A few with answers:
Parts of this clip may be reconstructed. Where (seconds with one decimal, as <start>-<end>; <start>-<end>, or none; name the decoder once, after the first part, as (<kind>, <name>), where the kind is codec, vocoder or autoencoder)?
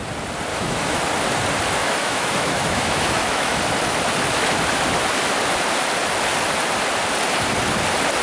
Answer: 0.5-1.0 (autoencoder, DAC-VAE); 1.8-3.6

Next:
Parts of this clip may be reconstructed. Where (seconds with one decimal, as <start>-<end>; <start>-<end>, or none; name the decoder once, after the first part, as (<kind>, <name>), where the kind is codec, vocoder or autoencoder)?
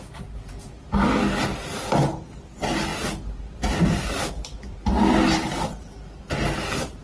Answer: none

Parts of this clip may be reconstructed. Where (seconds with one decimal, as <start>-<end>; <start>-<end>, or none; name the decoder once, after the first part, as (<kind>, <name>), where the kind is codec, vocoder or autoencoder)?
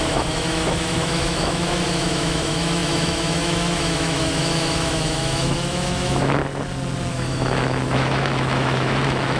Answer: 0.0-6.4 (autoencoder, DAC-VAE); 7.1-9.4